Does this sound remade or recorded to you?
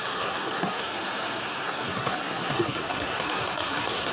remade